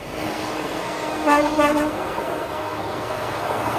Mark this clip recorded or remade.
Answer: remade